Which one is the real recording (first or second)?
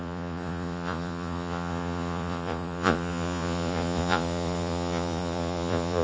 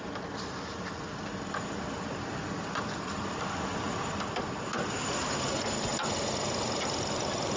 second